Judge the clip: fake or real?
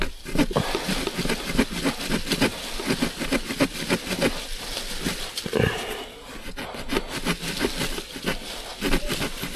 real